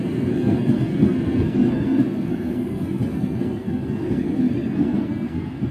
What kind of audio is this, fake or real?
fake